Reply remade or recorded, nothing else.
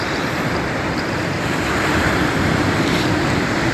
remade